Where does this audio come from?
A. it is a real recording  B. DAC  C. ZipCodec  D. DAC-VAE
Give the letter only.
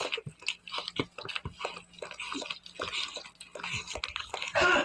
A